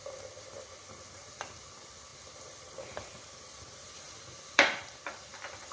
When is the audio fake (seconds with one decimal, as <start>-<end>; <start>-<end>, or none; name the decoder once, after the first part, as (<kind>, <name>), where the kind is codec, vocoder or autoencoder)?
2.1-5.7 (vocoder, BigVGAN v2)